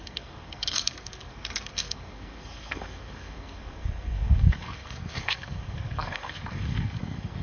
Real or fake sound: fake